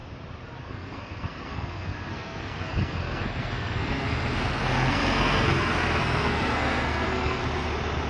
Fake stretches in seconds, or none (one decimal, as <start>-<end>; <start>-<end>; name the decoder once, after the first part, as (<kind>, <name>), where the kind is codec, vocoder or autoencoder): 0.6-7.4 (codec, SNAC)